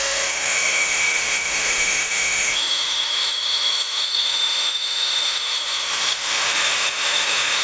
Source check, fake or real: fake